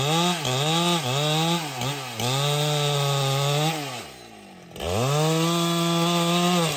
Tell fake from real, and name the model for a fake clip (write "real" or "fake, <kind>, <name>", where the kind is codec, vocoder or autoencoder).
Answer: real